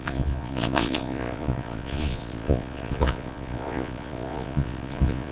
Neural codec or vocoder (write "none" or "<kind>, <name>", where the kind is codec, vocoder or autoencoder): vocoder, Vocos